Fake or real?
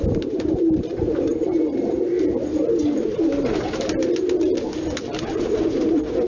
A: fake